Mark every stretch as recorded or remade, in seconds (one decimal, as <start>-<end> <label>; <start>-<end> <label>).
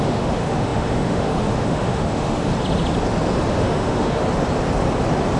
0.0-2.5 remade; 2.5-3.5 recorded; 3.5-4.2 remade; 4.2-5.4 recorded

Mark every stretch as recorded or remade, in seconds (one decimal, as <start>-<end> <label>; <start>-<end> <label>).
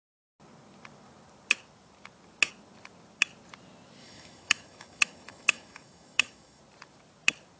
0.0-4.0 recorded; 4.0-6.6 remade; 6.6-7.6 recorded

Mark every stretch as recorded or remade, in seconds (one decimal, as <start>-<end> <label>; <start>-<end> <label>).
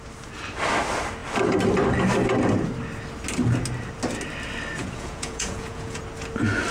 0.0-4.8 recorded; 4.8-6.0 remade; 6.0-6.7 recorded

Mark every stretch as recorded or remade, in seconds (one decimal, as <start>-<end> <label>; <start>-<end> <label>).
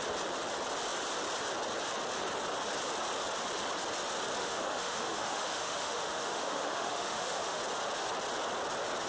0.0-4.4 recorded; 4.4-7.6 remade; 7.6-9.1 recorded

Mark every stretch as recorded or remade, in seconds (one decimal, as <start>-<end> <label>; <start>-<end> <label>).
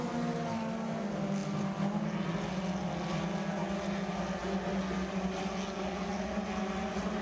0.0-7.2 recorded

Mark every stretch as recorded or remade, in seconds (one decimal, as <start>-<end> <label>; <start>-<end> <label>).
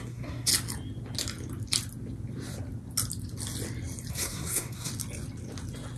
0.0-0.5 remade; 0.5-4.1 recorded; 4.1-4.9 remade; 4.9-6.0 recorded